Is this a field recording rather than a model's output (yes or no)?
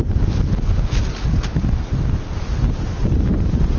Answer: yes